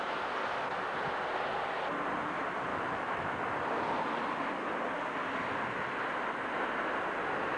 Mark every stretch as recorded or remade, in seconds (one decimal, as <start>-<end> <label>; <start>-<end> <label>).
0.0-2.7 recorded; 2.7-3.4 remade; 3.4-7.6 recorded